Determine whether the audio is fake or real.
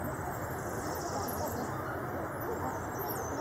real